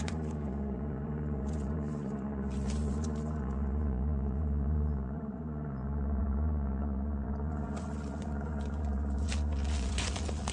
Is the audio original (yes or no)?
no